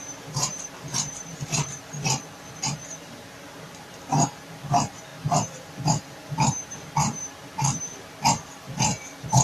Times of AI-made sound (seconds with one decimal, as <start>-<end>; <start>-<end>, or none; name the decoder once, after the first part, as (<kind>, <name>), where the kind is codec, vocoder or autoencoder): none